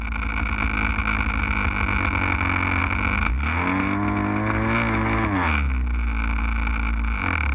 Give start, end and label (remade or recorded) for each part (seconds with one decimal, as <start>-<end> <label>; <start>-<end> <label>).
0.0-7.5 recorded